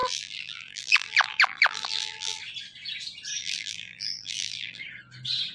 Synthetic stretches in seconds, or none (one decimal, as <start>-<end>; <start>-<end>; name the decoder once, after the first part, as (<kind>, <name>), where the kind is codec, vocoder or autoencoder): 0.0-2.4 (vocoder, BigVGAN v2); 3.4-4.8